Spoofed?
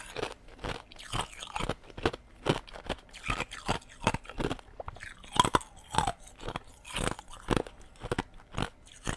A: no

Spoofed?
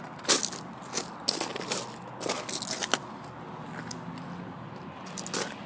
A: no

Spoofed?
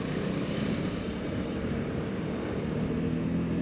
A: yes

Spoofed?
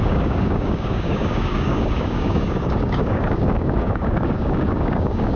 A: yes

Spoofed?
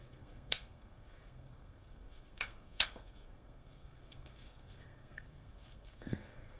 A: yes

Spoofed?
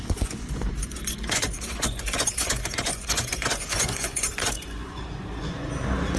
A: yes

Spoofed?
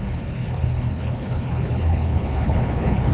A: yes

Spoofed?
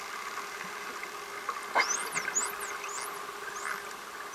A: no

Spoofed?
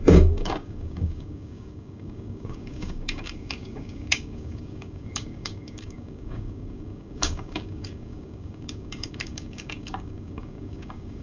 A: yes